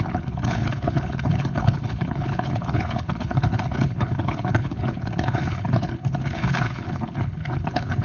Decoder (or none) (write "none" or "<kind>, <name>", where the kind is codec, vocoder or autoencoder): codec, HILCodec